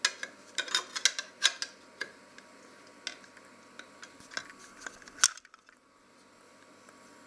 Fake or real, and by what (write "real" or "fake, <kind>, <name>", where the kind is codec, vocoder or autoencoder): real